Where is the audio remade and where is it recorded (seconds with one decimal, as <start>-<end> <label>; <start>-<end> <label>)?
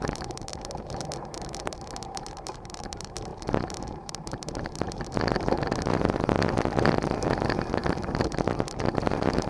0.0-9.5 remade